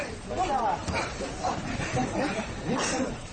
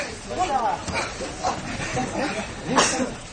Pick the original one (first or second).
second